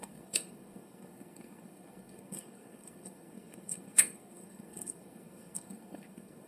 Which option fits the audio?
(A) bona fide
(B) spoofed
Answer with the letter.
B